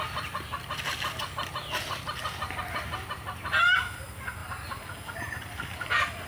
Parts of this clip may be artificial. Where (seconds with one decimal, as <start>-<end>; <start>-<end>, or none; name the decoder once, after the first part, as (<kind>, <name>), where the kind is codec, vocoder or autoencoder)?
4.4-4.9 (vocoder, BigVGAN v2); 5.7-6.3